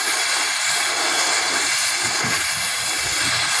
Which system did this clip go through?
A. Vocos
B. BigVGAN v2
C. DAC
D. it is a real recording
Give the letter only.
D